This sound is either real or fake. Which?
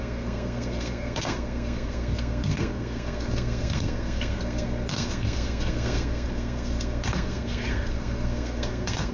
fake